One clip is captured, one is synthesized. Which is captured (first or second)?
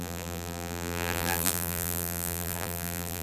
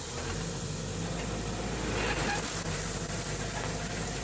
second